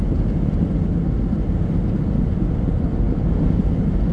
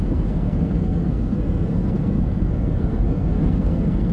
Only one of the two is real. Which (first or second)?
first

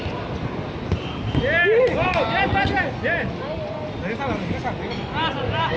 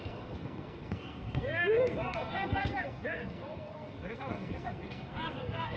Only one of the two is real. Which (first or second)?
first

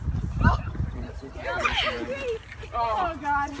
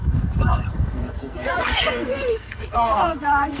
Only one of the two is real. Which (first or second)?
first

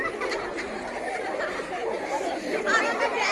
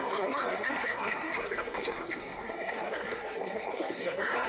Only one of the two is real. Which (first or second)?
first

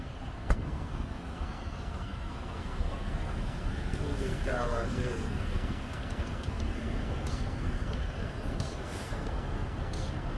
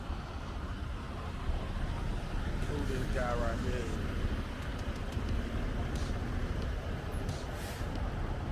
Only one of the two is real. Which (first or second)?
second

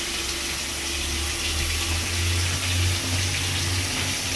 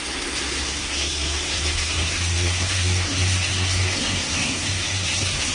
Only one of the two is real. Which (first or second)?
first